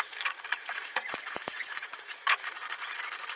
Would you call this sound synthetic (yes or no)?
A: yes